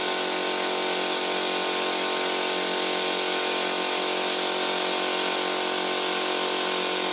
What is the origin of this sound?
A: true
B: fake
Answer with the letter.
A